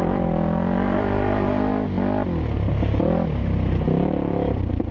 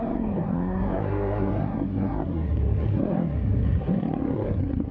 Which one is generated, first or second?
second